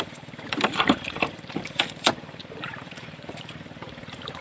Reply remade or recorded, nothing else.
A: remade